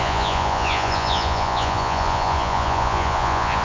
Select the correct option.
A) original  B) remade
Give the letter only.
B